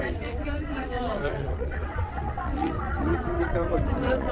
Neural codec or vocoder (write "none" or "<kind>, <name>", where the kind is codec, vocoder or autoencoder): vocoder, WaveNeXt